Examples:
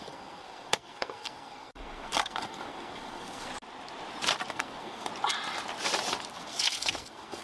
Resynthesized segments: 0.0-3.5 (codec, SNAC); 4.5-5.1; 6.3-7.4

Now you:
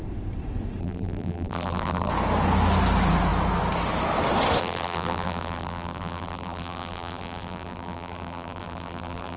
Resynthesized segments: 0.8-2.1 (vocoder, BigVGAN v2); 4.6-9.4

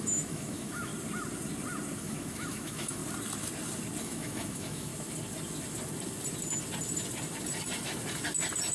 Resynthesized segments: 0.0-0.9 (autoencoder, DAC-VAE); 2.0-3.0; 4.0-4.9

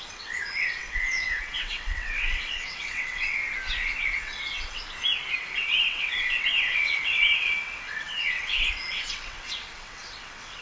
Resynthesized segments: 0.0-3.4 (vocoder, WaveNeXt); 4.0-4.8; 5.4-10.6

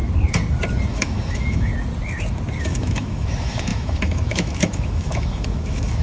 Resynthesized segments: 0.9-1.7 (autoencoder, DAC-VAE); 2.6-6.0

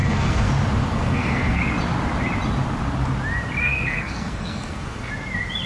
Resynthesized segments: 0.0-0.5 (codec, SNAC); 0.9-1.6; 3.6-5.1

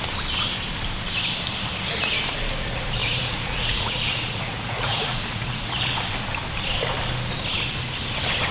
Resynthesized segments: 3.0-5.7 (vocoder, Vocos)

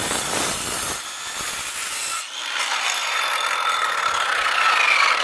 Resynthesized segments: none